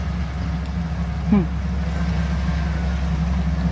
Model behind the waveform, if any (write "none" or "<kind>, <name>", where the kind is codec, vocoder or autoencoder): none